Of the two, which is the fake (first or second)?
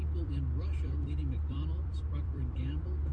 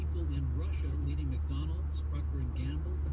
first